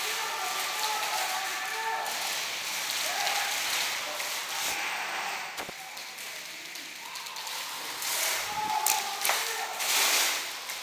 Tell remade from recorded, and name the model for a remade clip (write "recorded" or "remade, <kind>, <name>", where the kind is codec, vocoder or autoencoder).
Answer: recorded